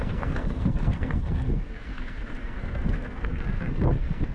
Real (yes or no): no